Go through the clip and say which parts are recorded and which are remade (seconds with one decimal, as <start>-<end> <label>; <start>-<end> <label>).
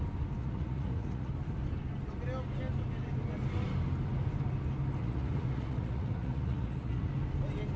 0.0-0.4 recorded; 0.4-1.3 remade; 1.3-5.0 recorded; 5.0-7.1 remade; 7.1-7.8 recorded